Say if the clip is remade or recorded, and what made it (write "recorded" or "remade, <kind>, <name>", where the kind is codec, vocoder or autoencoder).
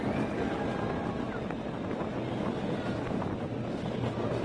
recorded